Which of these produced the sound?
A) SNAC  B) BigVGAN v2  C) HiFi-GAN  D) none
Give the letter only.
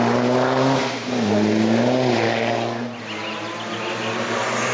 D